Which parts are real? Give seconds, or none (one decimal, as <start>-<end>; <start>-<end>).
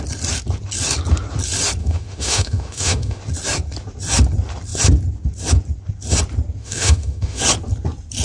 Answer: 0.0-1.8; 3.2-6.6; 7.4-8.2